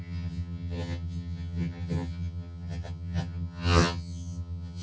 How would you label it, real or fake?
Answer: fake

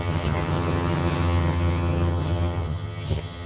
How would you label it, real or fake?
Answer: fake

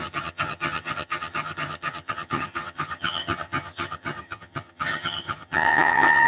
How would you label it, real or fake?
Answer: fake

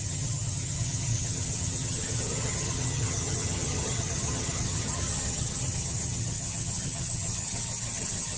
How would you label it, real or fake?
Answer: fake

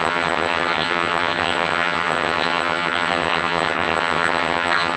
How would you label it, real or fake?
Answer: fake